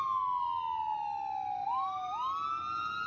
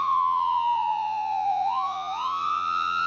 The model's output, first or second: second